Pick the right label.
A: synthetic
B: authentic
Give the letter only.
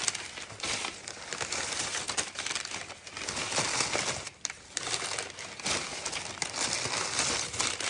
B